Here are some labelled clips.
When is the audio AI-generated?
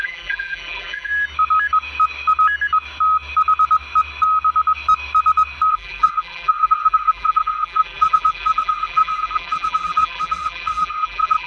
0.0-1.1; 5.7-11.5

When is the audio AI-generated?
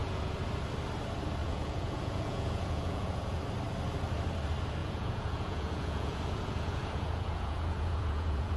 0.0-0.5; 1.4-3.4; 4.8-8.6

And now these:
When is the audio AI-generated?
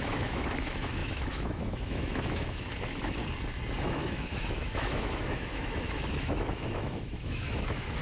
0.0-3.2; 3.8-8.0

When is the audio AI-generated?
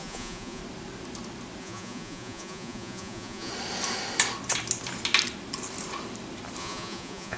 0.0-0.6; 1.6-3.5; 6.6-7.4